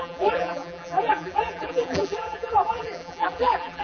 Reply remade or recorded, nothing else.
remade